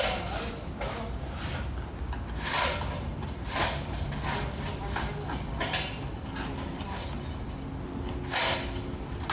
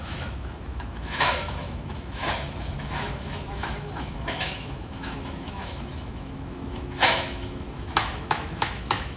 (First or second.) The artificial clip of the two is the second